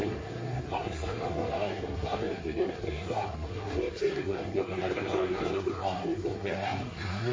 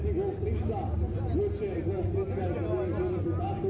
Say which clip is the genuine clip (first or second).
second